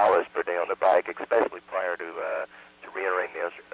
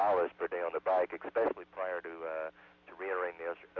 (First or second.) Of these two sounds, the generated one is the first